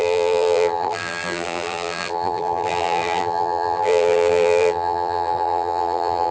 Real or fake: fake